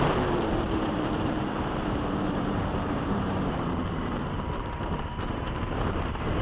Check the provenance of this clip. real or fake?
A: fake